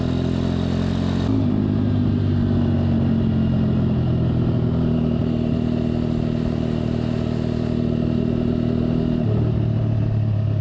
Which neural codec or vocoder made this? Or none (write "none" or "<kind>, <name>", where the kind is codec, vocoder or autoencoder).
none